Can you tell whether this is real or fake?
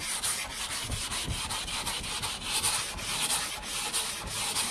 real